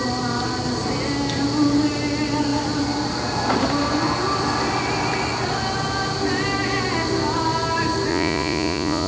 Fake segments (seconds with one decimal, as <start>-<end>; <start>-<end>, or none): 8.1-9.1